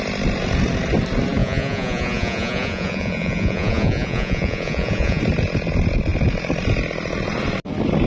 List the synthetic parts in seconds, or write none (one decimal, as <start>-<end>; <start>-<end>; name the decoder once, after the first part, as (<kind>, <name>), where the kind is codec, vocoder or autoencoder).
1.4-5.2 (vocoder, Vocos)